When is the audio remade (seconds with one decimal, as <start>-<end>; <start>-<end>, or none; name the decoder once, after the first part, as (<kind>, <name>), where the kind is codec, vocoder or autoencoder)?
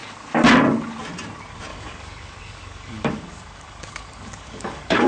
1.7-5.1 (codec, DAC)